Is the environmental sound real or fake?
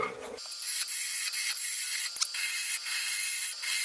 real